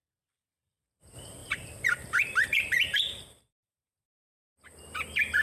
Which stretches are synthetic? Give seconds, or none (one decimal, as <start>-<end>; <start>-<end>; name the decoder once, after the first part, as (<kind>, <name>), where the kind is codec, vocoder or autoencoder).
1.4-4.5 (vocoder, BigVGAN v2)